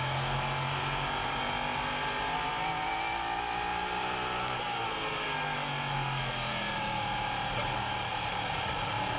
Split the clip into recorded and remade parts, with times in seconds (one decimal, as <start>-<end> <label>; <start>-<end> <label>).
0.0-3.7 recorded; 3.7-4.6 remade; 4.6-6.5 recorded; 6.5-9.2 remade